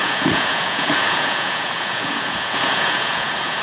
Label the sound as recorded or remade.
remade